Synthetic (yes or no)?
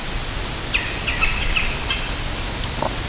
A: no